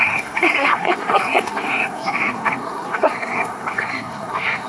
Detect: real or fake fake